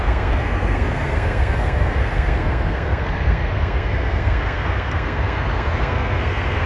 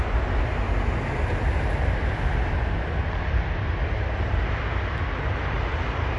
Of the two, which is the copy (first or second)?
first